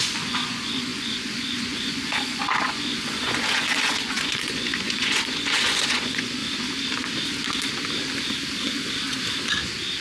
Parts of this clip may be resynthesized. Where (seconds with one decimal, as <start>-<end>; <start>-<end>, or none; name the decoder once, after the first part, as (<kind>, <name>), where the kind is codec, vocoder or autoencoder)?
0.0-6.4 (vocoder, Vocos)